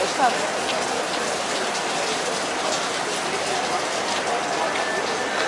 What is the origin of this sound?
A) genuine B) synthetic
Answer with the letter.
A